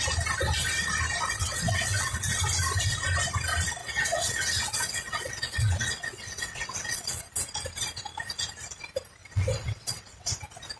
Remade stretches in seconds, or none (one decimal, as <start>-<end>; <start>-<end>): 1.4-2.2; 3.8-7.2; 9.2-10.3